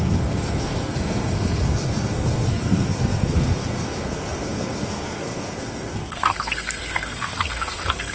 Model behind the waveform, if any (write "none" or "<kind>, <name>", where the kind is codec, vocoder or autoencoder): codec, SNAC